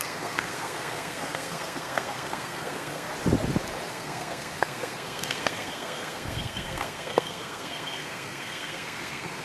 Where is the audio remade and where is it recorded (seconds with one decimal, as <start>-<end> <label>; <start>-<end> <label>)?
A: 0.0-3.1 remade; 3.1-3.9 recorded; 3.9-9.4 remade